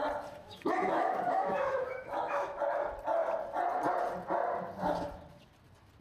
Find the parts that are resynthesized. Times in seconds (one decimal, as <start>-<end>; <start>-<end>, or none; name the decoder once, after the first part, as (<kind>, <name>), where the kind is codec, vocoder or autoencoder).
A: 0.4-2.6 (autoencoder, DAC-VAE)